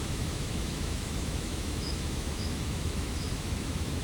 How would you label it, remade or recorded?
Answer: remade